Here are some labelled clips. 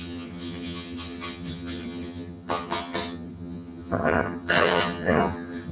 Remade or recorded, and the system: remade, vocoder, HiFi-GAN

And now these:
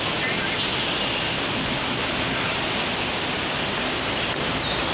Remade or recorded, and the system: recorded